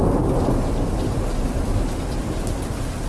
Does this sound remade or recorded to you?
recorded